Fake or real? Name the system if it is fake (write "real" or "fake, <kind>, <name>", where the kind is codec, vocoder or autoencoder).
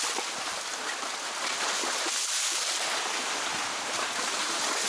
real